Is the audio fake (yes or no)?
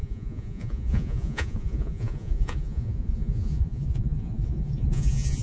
yes